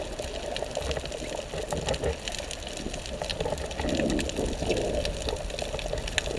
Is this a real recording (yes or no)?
yes